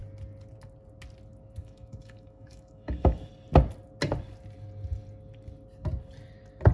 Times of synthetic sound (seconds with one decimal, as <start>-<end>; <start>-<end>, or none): 1.6-3.3